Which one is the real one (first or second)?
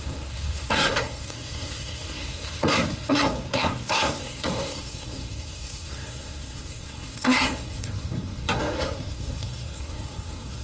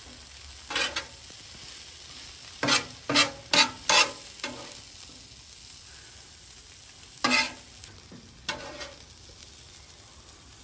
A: second